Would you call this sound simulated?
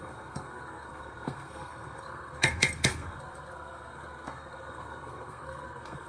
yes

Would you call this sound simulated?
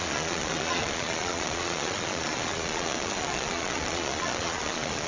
yes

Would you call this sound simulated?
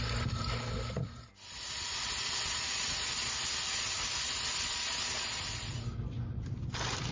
no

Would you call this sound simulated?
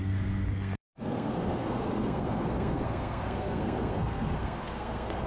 yes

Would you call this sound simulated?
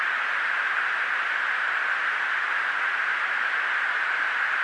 no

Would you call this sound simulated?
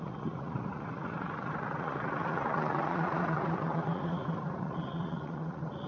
yes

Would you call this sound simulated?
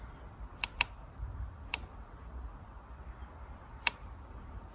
yes